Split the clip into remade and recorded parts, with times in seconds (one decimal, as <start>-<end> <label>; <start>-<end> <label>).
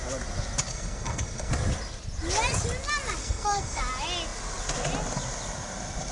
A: 0.0-0.7 recorded; 0.7-1.5 remade; 1.5-3.2 recorded; 3.2-3.8 remade; 3.8-6.1 recorded